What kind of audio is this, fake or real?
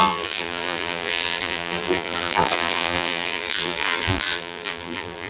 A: fake